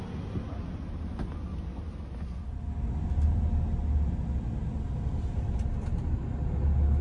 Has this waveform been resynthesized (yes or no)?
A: no